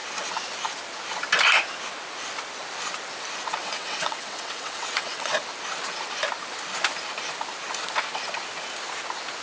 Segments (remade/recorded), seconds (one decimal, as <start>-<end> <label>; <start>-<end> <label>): 0.0-3.6 recorded; 3.6-5.4 remade; 5.4-9.4 recorded